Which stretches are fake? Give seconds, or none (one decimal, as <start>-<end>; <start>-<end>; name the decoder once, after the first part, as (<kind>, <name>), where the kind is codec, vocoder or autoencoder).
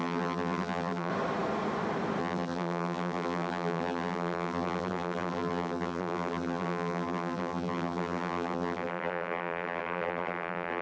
0.0-1.1 (vocoder, BigVGAN v2); 2.2-10.8